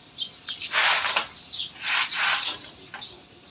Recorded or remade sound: recorded